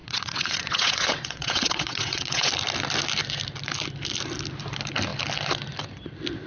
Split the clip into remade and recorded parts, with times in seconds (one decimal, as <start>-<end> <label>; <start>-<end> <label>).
0.0-2.5 remade; 2.5-6.5 recorded